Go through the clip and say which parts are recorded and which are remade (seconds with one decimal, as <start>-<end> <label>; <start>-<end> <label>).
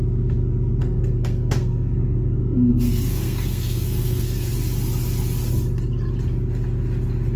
0.0-0.8 recorded; 0.8-4.5 remade; 4.5-7.4 recorded